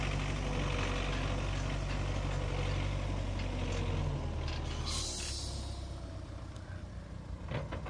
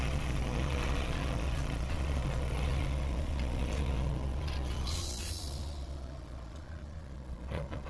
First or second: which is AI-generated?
second